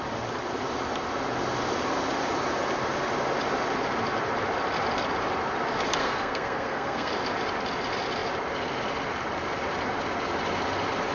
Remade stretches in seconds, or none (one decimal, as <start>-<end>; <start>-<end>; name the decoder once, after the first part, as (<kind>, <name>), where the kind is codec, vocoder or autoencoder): 6.0-7.1 (codec, SNAC)